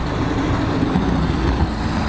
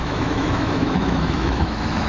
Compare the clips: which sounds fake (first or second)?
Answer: second